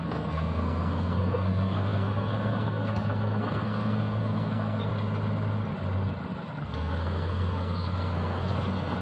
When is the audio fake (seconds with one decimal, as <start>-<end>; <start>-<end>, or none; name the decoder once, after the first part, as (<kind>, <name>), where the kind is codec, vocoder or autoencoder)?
0.0-4.9 (codec, SNAC); 6.6-9.0